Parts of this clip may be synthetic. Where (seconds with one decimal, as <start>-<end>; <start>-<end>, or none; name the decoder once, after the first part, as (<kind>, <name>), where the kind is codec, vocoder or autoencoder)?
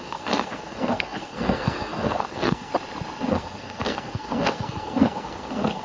0.0-2.7 (codec, SNAC); 3.3-5.8